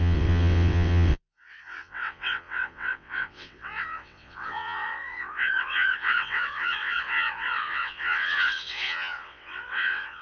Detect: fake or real fake